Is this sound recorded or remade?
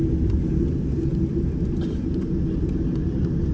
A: recorded